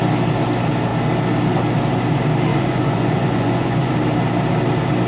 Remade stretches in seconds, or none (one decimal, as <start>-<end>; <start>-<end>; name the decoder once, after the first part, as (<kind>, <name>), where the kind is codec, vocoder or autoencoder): 2.5-3.9 (vocoder, Vocos)